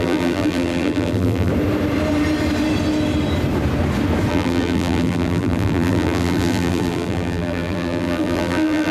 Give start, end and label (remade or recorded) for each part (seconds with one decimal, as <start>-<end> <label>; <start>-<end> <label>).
0.0-1.5 remade; 1.5-4.3 recorded; 4.3-8.9 remade